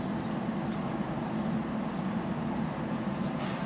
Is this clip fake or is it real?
real